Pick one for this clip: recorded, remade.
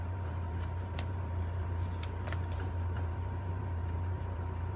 remade